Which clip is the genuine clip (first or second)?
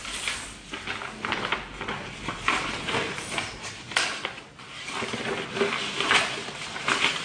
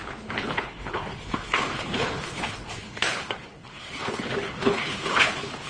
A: first